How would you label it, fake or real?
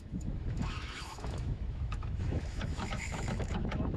fake